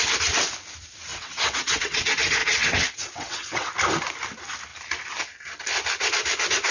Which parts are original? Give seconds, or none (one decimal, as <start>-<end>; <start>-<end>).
0.0-1.1; 2.0-2.4; 3.7-6.7